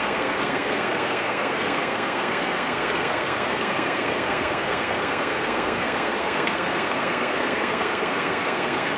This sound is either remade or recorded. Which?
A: remade